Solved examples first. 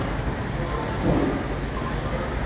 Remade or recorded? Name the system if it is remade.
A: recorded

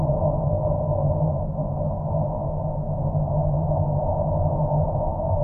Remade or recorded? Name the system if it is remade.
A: recorded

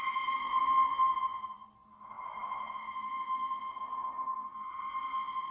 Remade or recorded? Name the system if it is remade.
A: recorded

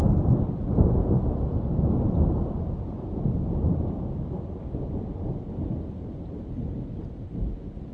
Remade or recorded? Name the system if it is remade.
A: recorded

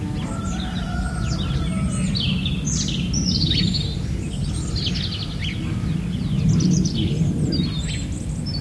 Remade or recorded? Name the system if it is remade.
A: recorded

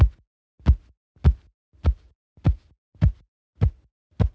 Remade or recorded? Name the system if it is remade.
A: recorded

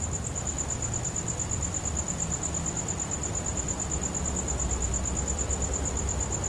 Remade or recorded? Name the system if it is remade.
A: recorded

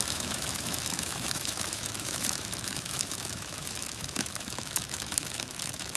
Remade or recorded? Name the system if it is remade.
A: remade, autoencoder, DAC-VAE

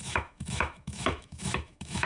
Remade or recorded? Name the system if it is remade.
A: remade, autoencoder, DAC-VAE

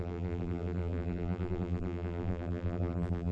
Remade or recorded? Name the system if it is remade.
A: remade, vocoder, BigVGAN v2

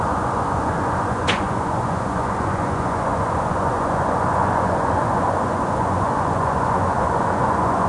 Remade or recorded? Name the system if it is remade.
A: remade, vocoder, Vocos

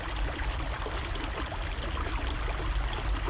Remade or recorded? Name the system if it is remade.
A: recorded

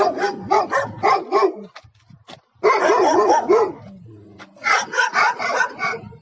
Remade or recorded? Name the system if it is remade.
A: recorded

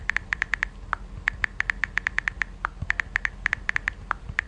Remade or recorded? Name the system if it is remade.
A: remade, vocoder, BigVGAN v2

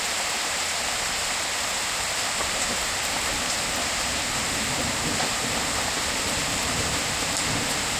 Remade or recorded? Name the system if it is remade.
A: remade, vocoder, BigVGAN v2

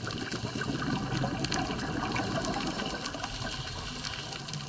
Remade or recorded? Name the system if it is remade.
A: recorded